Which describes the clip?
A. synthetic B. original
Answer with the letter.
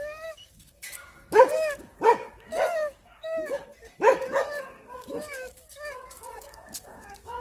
A